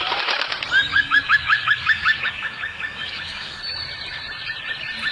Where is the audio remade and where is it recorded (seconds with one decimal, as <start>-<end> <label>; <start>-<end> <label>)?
0.0-0.9 recorded; 0.9-3.6 remade; 3.6-5.1 recorded